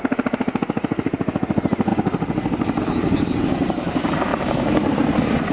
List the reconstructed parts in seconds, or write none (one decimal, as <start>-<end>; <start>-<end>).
none